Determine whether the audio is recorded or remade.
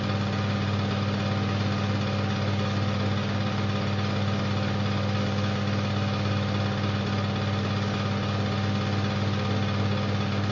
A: recorded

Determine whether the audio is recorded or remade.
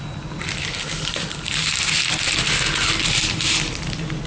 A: recorded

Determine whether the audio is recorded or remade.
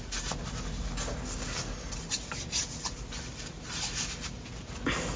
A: recorded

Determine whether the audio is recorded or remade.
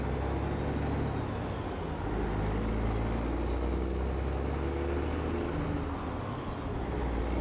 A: recorded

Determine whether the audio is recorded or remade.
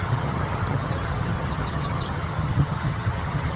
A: remade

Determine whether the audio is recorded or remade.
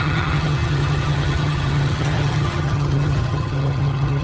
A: remade